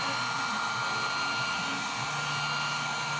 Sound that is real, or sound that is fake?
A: real